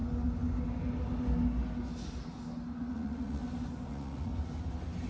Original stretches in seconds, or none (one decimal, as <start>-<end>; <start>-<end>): 0.0-2.9; 3.4-3.9; 4.3-5.1